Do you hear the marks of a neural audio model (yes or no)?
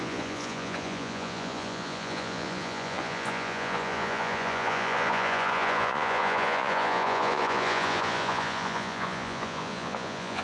yes